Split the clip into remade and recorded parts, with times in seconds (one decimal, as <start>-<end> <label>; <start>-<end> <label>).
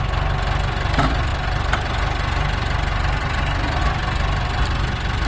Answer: 0.0-5.3 recorded